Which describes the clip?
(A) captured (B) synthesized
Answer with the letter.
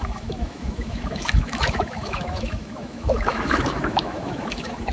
B